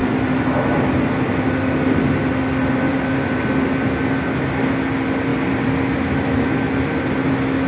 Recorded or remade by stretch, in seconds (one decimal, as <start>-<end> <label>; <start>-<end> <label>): 0.0-2.9 recorded; 2.9-3.5 remade; 3.5-7.7 recorded